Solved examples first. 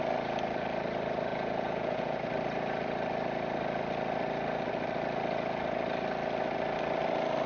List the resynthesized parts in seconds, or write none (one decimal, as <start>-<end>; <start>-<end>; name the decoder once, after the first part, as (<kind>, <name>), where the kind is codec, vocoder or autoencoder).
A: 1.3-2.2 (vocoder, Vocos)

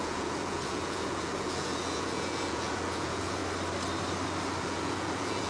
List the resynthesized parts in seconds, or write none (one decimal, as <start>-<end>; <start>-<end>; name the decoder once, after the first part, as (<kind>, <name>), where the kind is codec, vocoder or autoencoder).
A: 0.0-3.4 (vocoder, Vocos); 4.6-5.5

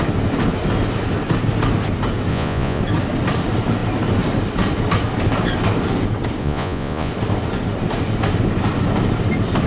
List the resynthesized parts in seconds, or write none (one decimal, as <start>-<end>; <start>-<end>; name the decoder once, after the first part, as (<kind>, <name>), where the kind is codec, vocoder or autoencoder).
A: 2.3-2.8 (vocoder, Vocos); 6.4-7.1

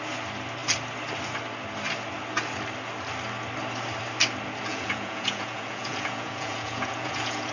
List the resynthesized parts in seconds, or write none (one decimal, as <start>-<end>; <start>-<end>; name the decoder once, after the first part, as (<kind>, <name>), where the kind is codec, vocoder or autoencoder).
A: 4.7-7.5 (vocoder, Vocos)

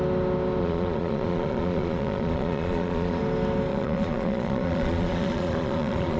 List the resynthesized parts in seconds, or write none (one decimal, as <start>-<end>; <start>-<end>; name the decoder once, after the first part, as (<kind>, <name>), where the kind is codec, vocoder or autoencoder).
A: 0.6-3.2 (vocoder, Vocos); 3.7-6.2

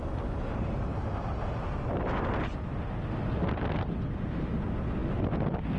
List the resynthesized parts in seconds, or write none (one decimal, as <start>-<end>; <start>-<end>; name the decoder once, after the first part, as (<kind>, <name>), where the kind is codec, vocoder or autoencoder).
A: none

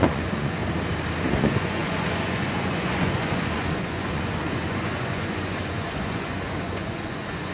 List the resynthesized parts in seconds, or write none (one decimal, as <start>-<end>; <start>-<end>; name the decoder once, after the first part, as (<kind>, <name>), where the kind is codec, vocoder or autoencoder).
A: 0.0-0.6 (vocoder, Vocos); 1.2-7.5

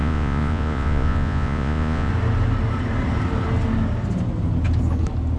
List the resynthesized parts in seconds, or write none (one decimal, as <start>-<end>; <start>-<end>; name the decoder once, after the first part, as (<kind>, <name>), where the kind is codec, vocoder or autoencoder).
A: 0.0-2.1 (vocoder, Vocos)